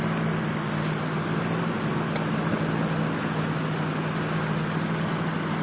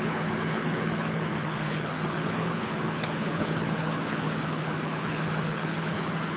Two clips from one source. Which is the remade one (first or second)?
second